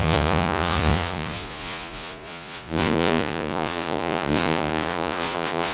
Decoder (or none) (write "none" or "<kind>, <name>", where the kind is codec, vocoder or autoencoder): vocoder, Vocos